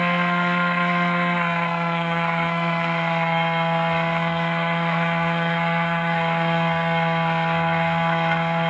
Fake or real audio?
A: fake